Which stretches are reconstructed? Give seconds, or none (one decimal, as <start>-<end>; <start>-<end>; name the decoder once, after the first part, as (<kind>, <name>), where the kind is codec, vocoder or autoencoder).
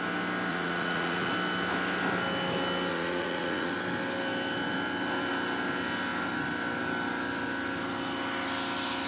0.5-1.3 (vocoder, Vocos); 2.9-3.7